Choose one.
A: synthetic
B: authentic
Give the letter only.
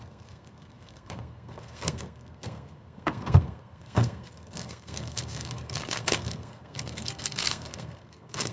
A